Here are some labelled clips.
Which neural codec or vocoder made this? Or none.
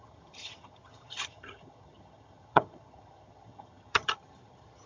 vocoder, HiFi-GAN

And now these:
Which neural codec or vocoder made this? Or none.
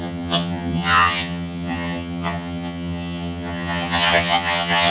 vocoder, HiFi-GAN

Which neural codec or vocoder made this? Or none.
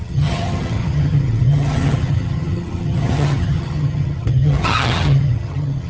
vocoder, HiFi-GAN